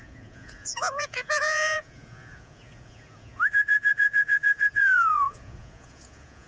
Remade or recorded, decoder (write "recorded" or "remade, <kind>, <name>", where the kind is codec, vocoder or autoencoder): remade, vocoder, Vocos